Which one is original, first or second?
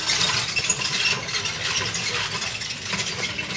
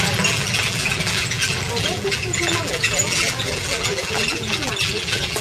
first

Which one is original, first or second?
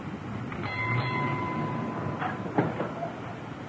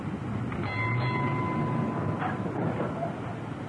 second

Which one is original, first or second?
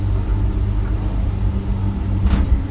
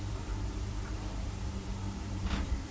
first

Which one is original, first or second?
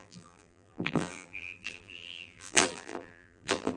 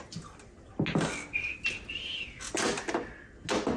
second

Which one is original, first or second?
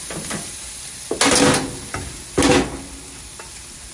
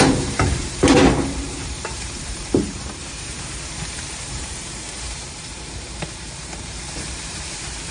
first